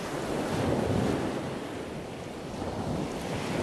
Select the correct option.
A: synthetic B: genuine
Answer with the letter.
B